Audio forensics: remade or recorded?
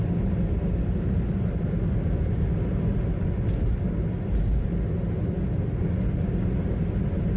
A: recorded